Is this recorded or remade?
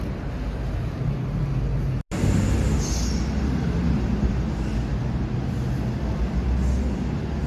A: recorded